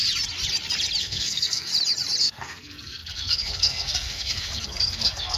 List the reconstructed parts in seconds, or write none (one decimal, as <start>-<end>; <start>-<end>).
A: 1.0-1.7; 2.2-5.4